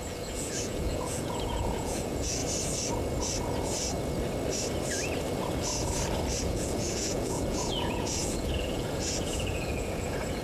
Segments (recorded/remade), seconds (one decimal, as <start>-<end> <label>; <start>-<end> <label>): 0.0-2.4 remade; 2.4-6.4 recorded; 6.4-10.4 remade